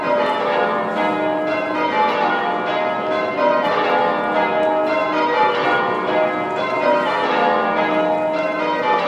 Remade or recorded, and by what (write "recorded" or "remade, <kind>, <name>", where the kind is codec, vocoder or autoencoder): recorded